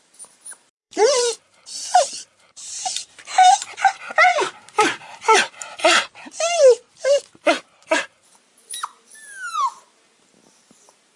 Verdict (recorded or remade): remade